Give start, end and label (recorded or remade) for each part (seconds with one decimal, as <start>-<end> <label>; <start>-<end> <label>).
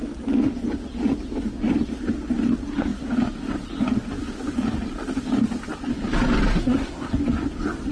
0.0-6.5 recorded; 6.5-7.1 remade; 7.1-7.9 recorded